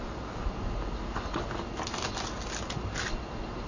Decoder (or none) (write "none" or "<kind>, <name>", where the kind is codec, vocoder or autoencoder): none